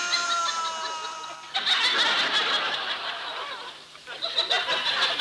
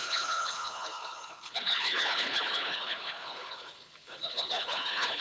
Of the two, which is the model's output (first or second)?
second